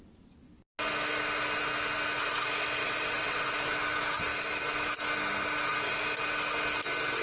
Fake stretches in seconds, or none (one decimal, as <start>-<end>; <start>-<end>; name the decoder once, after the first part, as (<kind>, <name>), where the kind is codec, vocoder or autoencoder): 2.8-3.4 (vocoder, WaveNeXt)